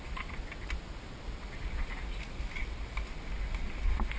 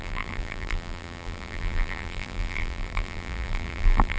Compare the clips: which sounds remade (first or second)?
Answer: second